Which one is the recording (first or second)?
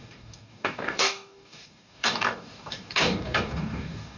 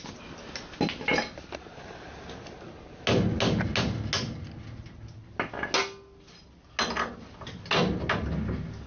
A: second